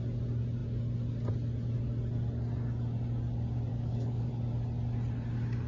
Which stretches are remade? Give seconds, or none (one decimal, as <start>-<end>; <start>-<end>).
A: 3.7-4.3

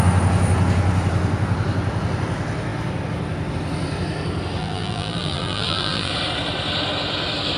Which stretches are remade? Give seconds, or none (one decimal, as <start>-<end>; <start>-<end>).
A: 4.6-6.1

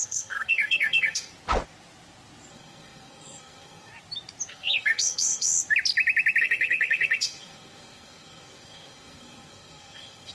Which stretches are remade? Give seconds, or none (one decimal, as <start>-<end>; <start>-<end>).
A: 0.0-1.3; 2.5-3.9; 4.5-5.5; 6.4-10.3

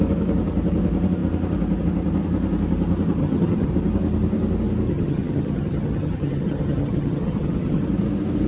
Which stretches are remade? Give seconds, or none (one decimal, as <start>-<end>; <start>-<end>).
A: 3.2-3.7; 4.9-7.8

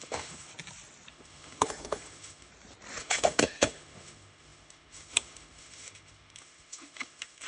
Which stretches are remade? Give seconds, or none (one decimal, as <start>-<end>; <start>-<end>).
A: 0.0-0.5; 1.1-2.5; 3.0-7.5